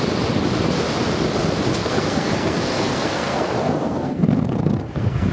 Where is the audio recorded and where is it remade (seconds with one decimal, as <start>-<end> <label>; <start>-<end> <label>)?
0.0-1.7 recorded; 1.7-5.3 remade